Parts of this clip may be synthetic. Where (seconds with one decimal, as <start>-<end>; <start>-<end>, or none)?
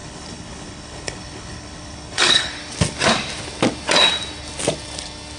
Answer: 0.0-2.5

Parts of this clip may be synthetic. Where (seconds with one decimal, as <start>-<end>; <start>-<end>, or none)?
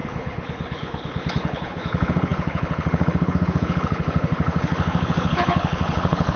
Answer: 0.0-6.4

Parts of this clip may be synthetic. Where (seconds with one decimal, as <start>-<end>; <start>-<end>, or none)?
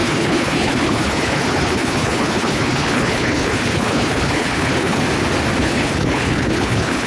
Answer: 0.0-5.0; 5.6-7.1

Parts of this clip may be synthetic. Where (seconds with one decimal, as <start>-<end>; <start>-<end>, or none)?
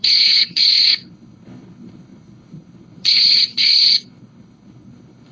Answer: 0.0-5.3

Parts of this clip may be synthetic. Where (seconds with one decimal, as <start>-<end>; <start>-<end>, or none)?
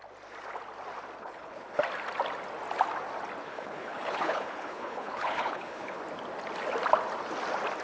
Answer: 1.2-1.8; 3.4-6.0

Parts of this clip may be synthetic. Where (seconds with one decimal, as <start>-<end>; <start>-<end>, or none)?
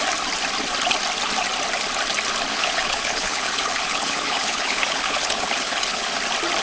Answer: 2.5-6.1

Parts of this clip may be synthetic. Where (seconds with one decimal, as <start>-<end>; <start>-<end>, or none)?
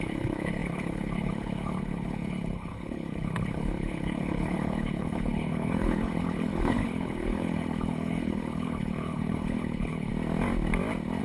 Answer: 0.0-10.1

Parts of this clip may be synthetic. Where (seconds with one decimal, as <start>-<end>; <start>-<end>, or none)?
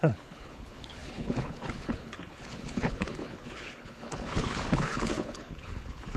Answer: 0.0-6.2